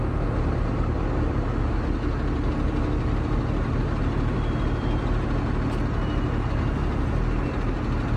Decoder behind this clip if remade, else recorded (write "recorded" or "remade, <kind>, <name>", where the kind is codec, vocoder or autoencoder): recorded